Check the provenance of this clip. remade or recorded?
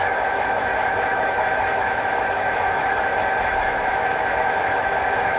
remade